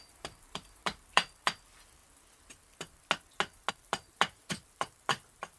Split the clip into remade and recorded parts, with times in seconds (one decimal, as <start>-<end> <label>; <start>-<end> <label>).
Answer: 0.0-2.0 remade; 2.0-3.7 recorded; 3.7-5.6 remade